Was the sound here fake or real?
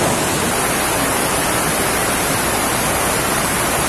real